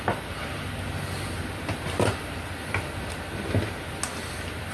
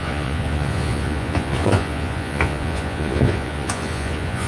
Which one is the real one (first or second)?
first